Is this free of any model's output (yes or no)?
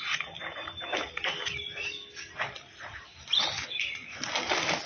yes